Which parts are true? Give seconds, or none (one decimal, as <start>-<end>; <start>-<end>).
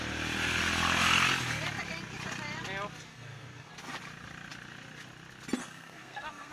0.0-3.1; 3.7-5.6